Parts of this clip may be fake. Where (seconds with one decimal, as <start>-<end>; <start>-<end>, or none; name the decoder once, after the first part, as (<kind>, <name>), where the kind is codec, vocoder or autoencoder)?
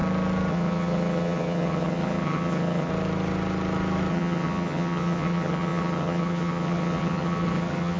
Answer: 0.5-2.9 (vocoder, HiFi-GAN); 4.1-8.0